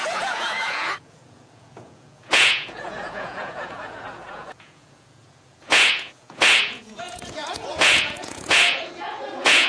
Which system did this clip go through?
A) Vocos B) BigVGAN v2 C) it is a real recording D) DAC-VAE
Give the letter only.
A